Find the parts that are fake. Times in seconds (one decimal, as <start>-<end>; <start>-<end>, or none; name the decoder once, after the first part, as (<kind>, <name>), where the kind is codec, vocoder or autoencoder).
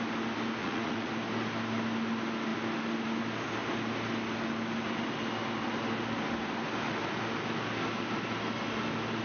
0.6-1.1 (vocoder, Vocos)